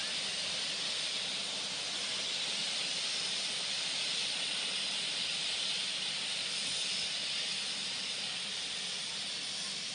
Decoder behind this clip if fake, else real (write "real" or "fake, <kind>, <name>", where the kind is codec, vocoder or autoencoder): real